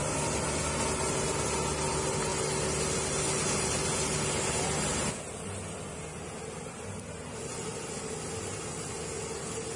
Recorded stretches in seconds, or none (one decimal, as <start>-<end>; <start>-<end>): 0.0-9.8